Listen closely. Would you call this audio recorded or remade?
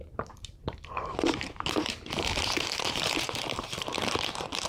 remade